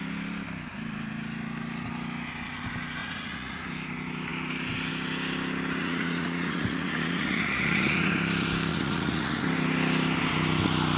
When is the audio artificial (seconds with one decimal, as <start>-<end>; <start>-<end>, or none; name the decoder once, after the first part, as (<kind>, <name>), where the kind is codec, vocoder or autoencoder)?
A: 3.0-3.6 (vocoder, Vocos); 5.8-8.1; 8.7-9.4